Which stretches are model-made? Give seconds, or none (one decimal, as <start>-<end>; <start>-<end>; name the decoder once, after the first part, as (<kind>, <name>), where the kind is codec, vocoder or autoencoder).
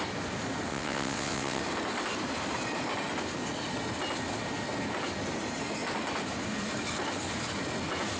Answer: 0.7-1.6 (vocoder, WaveNeXt)